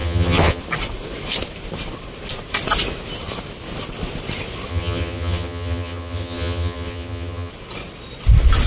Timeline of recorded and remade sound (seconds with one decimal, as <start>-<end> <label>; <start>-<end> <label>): 0.0-0.6 remade; 0.6-4.7 recorded; 4.7-7.5 remade; 7.5-8.7 recorded